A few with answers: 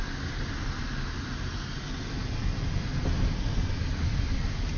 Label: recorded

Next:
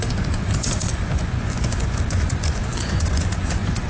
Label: remade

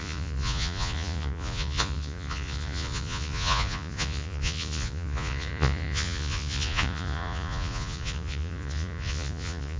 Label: remade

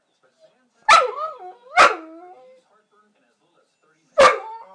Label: recorded